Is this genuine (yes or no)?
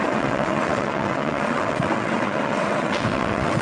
no